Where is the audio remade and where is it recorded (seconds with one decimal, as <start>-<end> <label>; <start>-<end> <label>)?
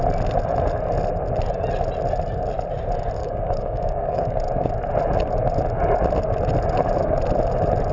0.0-3.2 recorded; 3.2-4.3 remade; 4.3-7.9 recorded